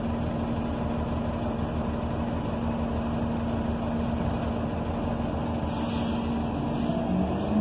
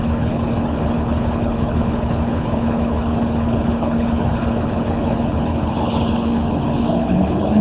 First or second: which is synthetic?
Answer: second